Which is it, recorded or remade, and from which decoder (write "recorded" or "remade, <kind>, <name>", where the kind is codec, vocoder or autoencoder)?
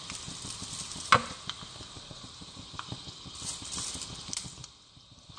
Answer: recorded